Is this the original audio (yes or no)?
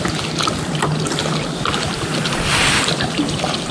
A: yes